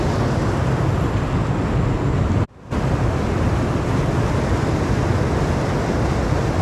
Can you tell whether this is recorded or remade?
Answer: recorded